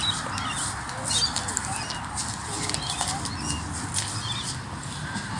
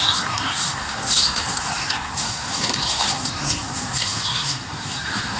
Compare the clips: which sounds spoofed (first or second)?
second